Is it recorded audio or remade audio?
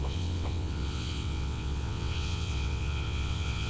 remade